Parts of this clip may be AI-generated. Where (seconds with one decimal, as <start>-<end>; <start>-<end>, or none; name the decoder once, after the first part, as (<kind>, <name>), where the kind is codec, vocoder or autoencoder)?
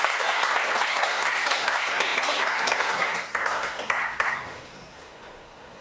0.0-0.4 (codec, SNAC); 0.9-5.8